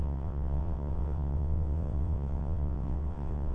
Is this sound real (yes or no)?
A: no